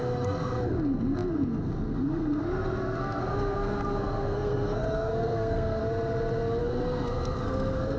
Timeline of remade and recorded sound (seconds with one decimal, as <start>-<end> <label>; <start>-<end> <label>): 0.0-5.8 remade; 5.8-6.6 recorded; 6.6-8.0 remade